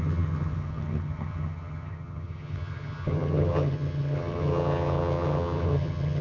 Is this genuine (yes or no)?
no